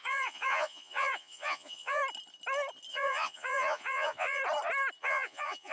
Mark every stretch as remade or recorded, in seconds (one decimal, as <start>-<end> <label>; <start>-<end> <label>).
0.0-2.0 remade; 2.0-2.9 recorded; 2.9-4.4 remade; 4.4-5.0 recorded; 5.0-5.7 remade